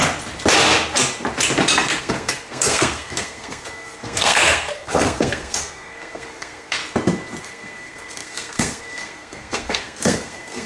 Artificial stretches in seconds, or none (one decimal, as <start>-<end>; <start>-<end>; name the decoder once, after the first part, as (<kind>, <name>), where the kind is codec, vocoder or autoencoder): 2.0-6.8 (codec, SNAC); 7.4-10.7